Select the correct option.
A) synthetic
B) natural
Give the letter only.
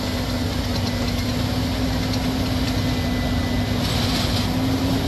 B